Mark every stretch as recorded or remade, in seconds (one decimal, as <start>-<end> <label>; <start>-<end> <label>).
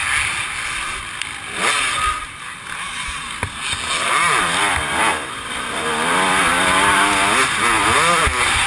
0.0-5.1 recorded; 5.1-5.8 remade; 5.8-8.7 recorded